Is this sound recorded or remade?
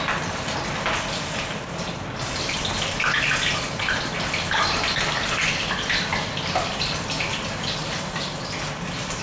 recorded